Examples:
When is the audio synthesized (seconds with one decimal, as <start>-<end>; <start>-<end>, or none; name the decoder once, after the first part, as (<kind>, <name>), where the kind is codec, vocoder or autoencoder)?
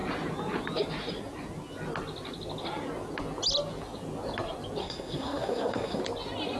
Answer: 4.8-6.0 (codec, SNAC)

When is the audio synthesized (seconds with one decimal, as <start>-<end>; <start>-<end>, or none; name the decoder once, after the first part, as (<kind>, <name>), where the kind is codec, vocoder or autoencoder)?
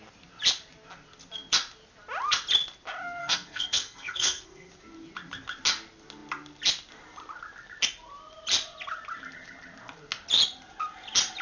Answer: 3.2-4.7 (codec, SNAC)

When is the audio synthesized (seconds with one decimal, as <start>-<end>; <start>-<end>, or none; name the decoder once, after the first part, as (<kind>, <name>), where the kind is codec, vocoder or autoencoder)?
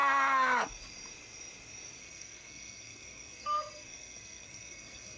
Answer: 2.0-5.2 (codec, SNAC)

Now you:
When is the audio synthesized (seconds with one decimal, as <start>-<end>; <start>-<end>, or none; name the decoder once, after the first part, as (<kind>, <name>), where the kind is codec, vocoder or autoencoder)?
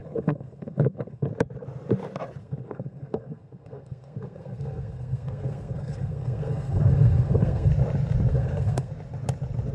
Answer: 0.0-1.3 (codec, SNAC); 2.4-7.7; 8.3-8.9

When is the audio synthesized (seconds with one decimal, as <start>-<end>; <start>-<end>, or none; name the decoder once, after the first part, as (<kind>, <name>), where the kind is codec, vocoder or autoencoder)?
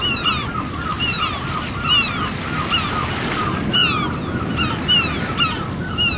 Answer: none